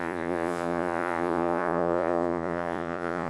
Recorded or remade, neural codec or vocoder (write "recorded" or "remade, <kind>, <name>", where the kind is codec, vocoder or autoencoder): remade, vocoder, Vocos